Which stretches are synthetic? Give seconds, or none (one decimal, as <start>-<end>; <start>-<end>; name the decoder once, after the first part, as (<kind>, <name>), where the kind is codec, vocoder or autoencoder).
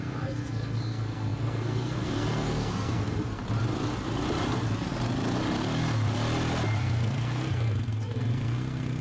0.0-3.4 (codec, SNAC); 6.8-9.0